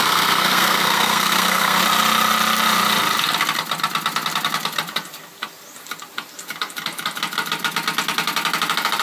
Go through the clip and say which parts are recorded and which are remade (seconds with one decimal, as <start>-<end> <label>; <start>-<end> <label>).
0.0-1.8 remade; 1.8-9.0 recorded